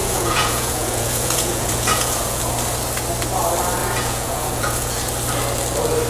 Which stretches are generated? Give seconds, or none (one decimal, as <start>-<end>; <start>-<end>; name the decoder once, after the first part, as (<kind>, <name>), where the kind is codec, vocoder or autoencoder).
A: 0.0-2.4 (vocoder, Vocos); 3.8-5.1